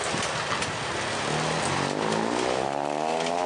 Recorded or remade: recorded